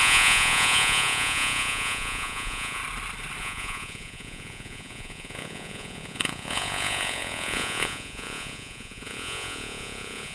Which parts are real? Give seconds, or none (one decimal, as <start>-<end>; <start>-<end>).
2.8-3.4